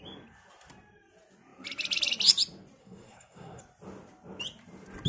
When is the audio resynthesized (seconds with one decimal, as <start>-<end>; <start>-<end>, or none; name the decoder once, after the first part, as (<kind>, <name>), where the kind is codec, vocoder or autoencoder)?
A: 2.8-3.6 (codec, SNAC)

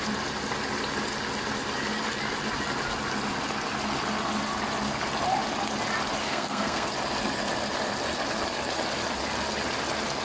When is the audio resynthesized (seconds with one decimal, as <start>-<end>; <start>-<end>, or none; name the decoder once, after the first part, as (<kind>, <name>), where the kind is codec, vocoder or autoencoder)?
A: 6.2-6.9 (codec, SNAC)